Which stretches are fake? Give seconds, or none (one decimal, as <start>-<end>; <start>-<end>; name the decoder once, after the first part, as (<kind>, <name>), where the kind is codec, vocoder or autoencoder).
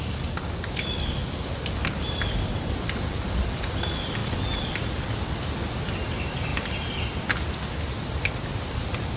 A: none